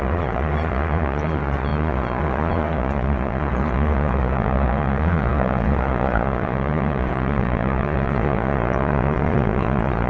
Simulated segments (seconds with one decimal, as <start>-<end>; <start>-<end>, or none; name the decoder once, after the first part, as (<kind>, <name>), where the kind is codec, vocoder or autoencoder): 0.0-10.1 (vocoder, Vocos)